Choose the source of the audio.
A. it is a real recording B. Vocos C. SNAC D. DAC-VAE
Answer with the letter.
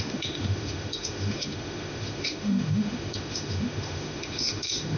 D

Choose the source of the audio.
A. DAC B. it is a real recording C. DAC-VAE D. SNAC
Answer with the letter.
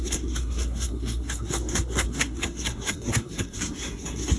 D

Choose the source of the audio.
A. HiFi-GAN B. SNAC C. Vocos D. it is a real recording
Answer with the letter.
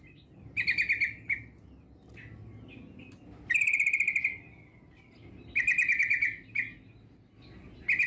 D